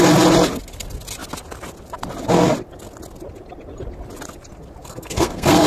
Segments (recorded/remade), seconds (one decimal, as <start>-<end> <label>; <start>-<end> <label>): 0.0-4.8 recorded; 4.8-5.7 remade